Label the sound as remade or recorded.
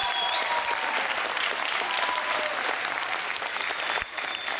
recorded